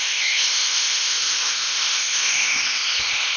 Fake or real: fake